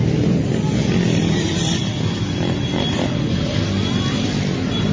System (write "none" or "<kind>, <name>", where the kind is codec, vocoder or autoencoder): none